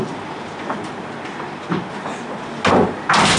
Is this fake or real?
real